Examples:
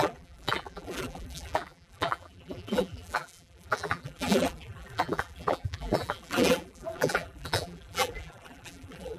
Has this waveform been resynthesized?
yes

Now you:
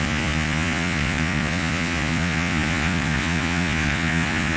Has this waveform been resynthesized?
yes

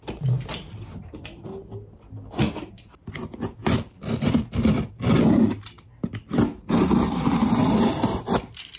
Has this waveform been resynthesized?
no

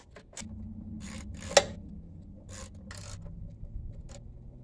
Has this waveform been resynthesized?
no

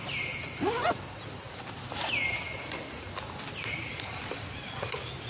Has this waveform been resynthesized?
no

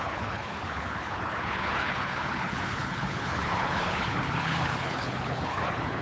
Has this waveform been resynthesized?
yes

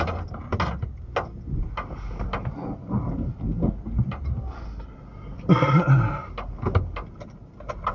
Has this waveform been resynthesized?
no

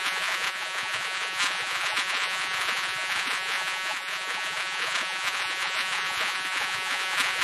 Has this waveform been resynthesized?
yes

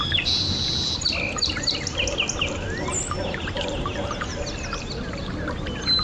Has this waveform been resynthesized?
no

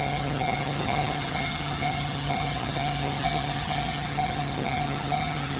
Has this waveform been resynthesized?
yes